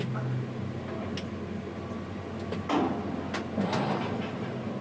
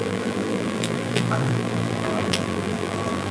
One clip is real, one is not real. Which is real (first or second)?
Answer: first